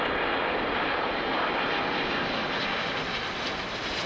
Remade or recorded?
recorded